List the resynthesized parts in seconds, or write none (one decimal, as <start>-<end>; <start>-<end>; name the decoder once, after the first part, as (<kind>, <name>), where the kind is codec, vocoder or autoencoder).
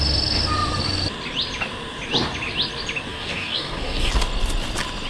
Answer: 3.1-4.1 (codec, DAC)